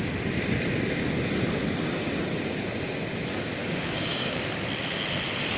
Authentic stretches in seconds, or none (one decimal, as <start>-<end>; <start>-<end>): 0.0-3.6; 4.4-5.6